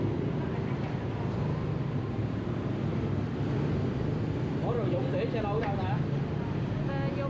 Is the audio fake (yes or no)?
no